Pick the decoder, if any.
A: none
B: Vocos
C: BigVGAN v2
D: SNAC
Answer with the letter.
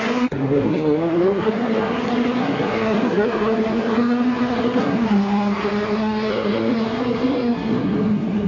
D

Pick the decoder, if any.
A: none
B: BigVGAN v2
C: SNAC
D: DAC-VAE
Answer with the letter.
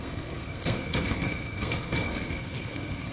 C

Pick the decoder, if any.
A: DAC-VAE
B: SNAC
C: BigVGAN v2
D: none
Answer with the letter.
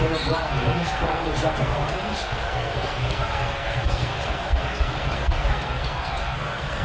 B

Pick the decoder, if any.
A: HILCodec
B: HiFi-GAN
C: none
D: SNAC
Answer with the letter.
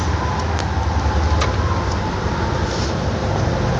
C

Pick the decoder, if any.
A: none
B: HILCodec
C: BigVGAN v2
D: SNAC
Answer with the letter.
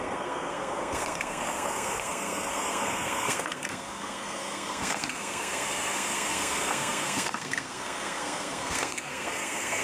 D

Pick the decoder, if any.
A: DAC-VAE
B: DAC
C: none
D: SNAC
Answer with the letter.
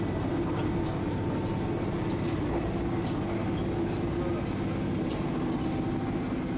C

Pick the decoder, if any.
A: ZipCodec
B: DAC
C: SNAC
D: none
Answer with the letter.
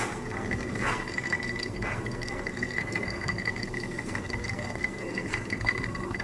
C